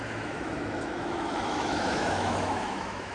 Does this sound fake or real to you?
fake